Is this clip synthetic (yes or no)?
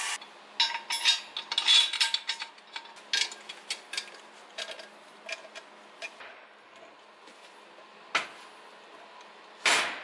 no